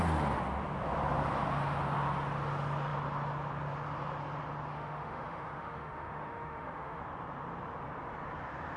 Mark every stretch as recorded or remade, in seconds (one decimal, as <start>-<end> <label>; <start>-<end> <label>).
0.0-4.7 recorded; 4.7-7.0 remade; 7.0-8.8 recorded